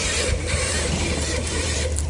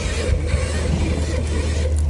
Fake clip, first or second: first